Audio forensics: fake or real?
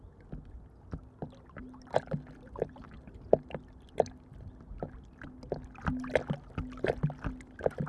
real